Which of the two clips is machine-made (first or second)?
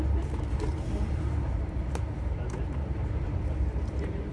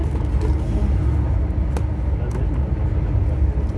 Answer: first